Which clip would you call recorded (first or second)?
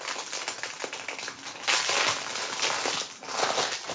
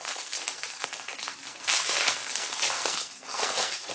first